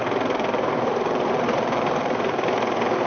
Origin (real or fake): real